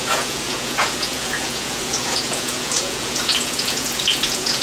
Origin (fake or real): fake